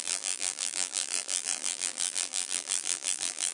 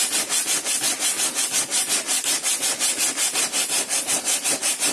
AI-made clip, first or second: first